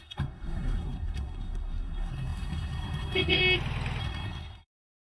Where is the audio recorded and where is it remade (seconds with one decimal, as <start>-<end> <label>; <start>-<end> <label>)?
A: 0.0-3.4 remade; 3.4-4.0 recorded; 4.0-5.0 remade